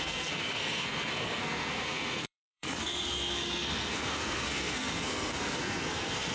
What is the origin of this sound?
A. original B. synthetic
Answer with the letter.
B